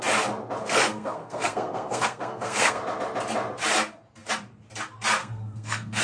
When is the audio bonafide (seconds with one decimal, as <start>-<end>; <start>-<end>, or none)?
0.0-0.6; 2.8-5.2